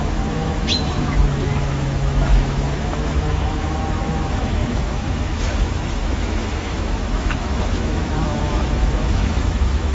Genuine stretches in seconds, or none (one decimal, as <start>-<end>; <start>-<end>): none